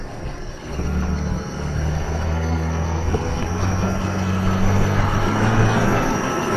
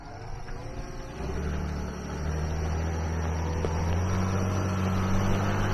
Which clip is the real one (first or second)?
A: second